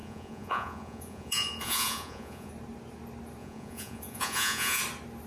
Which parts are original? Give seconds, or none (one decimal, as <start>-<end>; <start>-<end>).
2.5-3.4; 4.8-5.3